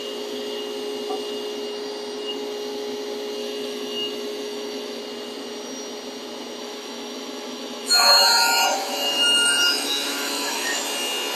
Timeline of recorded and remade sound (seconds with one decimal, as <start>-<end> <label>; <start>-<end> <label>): 0.0-3.4 recorded; 3.4-5.0 remade; 5.0-6.6 recorded; 6.6-10.8 remade; 10.8-11.4 recorded